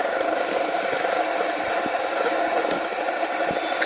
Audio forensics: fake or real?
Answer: real